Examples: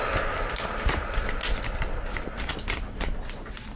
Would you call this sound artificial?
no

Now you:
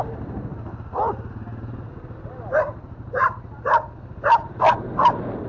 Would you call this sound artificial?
no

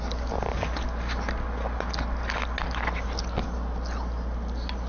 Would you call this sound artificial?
no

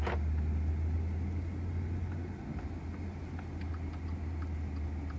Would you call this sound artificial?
no